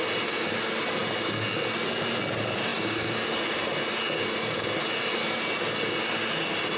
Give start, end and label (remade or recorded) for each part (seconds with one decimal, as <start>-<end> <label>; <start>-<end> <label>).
0.0-6.8 recorded